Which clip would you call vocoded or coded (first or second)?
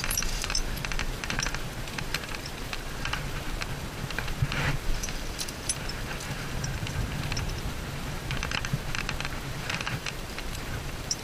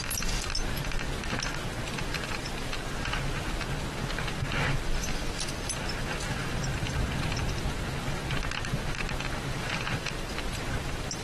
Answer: first